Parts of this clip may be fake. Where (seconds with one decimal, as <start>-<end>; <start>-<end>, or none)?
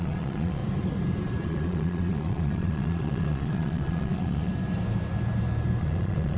0.0-0.6; 1.4-4.5; 5.8-6.4